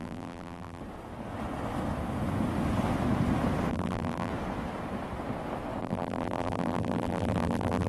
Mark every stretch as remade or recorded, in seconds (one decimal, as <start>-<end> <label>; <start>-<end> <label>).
0.0-0.8 remade; 0.8-3.7 recorded; 3.7-4.3 remade; 4.3-5.8 recorded; 5.8-7.9 remade